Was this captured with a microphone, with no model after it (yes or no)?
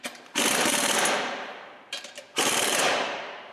no